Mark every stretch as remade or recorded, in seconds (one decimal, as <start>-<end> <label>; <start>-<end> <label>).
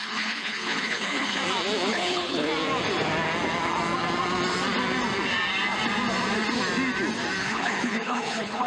0.0-1.4 remade; 1.4-1.9 recorded; 1.9-2.5 remade; 2.5-7.4 recorded; 7.4-8.7 remade